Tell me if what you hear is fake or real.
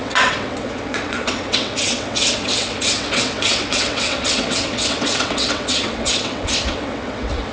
fake